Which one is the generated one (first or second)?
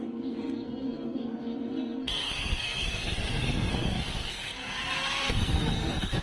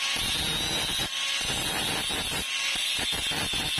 first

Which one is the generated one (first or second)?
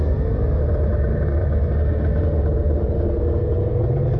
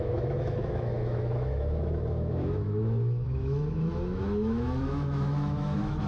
second